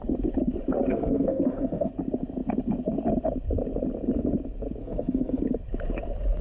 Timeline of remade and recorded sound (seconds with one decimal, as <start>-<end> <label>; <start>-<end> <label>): 0.0-0.9 recorded; 0.9-1.9 remade; 1.9-4.8 recorded; 4.8-5.4 remade; 5.4-6.4 recorded